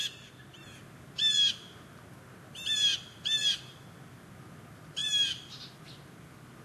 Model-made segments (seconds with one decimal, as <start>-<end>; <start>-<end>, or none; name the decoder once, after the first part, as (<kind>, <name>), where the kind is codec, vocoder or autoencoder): 5.0-5.8 (vocoder, BigVGAN v2)